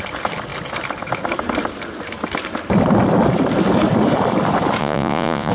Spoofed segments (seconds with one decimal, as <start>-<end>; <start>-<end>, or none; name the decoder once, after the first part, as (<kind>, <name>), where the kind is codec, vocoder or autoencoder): 4.8-5.5 (vocoder, Vocos)